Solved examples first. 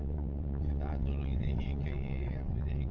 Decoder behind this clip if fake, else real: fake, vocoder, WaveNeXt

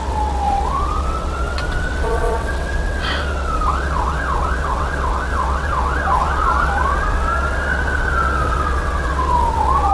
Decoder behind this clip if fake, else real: fake, vocoder, WaveNeXt